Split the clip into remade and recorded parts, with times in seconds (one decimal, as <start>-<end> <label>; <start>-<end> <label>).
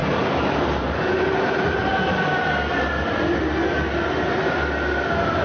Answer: 0.0-1.0 remade; 1.0-5.4 recorded